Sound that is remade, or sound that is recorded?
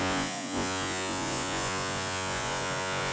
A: remade